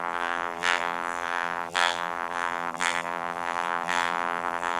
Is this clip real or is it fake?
fake